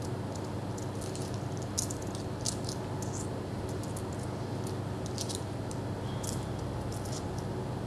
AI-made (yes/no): no